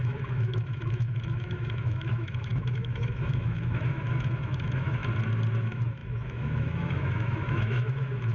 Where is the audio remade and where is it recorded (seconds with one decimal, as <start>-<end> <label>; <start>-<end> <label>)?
0.0-5.0 remade; 5.0-5.6 recorded; 5.6-8.3 remade